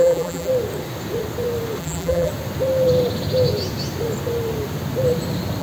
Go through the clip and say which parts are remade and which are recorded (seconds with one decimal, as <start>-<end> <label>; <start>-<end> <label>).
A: 0.0-0.5 remade; 0.5-1.8 recorded; 1.8-2.3 remade; 2.3-5.6 recorded